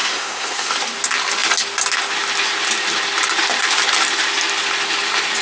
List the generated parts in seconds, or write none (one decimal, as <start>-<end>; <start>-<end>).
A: 0.0-0.7